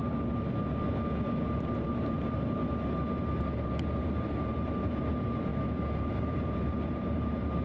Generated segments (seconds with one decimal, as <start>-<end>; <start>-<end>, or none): 1.6-2.6; 3.4-5.5; 6.1-7.6